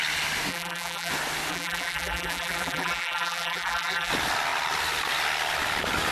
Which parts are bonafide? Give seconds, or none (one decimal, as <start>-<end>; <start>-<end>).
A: 0.0-0.5; 1.1-1.5; 4.1-6.1

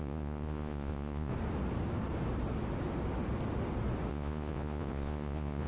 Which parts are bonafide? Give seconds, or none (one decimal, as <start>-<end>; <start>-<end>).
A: 1.3-4.1

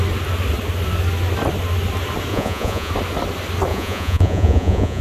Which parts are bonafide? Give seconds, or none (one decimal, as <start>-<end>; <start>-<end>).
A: 0.0-2.3; 2.9-3.7

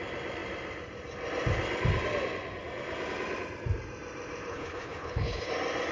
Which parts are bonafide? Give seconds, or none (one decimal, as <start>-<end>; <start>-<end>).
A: 0.0-4.5; 5.5-5.9

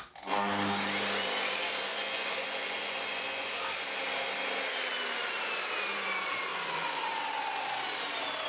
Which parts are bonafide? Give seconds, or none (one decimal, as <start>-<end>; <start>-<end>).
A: 0.0-1.9; 3.5-6.5; 7.0-8.5

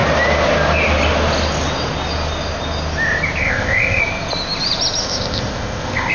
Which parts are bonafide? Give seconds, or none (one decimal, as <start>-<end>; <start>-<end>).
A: 0.0-3.4; 4.0-5.0

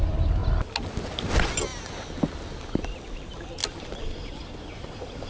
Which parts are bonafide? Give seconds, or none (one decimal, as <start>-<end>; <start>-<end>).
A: 0.0-5.3

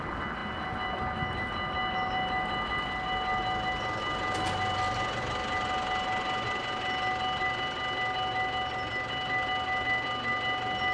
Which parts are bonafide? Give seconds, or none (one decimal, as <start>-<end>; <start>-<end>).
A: 0.0-10.9